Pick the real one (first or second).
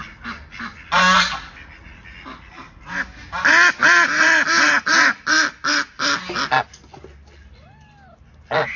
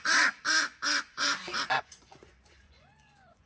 first